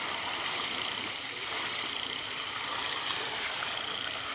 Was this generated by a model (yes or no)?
yes